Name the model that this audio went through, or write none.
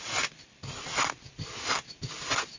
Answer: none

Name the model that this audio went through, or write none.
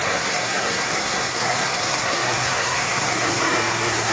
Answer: codec, SNAC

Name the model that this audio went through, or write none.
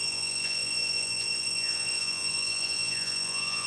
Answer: vocoder, Vocos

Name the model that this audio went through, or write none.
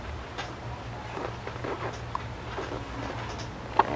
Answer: none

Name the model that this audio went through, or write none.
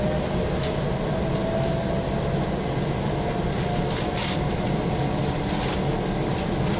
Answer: none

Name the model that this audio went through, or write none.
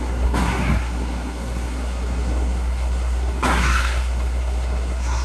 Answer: codec, SNAC